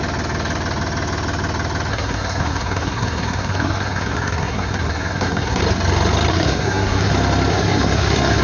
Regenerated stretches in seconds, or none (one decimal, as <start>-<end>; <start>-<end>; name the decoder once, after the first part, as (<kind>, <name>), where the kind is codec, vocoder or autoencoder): 1.9-5.6 (codec, SNAC); 6.3-7.1; 7.5-8.4